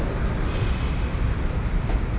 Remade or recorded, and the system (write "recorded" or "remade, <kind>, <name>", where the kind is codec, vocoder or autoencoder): recorded